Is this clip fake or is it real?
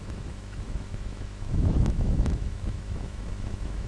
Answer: fake